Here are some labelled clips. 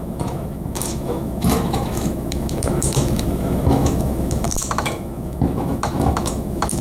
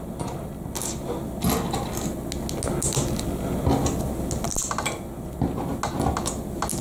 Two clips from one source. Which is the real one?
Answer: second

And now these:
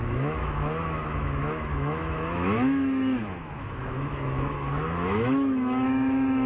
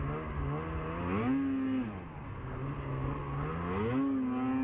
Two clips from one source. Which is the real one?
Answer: second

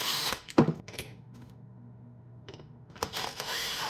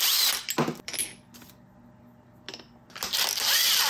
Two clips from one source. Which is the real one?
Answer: second